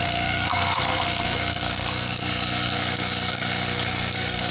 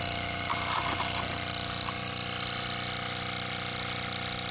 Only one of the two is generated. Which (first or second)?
first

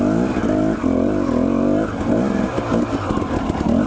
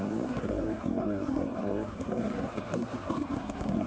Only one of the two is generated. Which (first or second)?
second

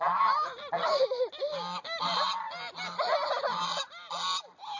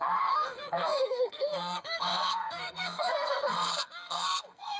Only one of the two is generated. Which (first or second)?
second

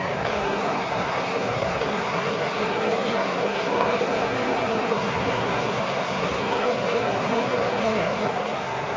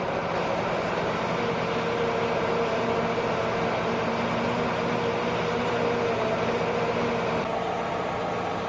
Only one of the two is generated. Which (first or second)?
first